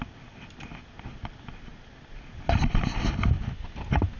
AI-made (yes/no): no